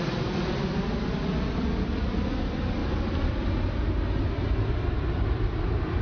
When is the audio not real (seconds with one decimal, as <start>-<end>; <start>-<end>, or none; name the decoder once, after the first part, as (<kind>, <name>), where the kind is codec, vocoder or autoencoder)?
none